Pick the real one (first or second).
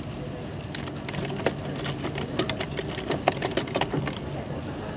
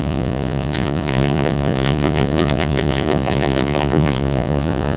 first